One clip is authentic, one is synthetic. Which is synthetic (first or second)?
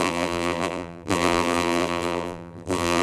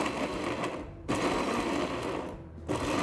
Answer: first